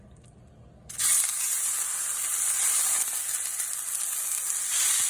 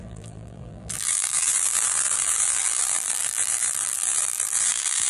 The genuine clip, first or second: first